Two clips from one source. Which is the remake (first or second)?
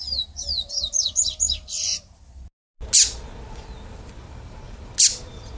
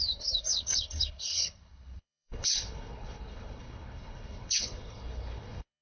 second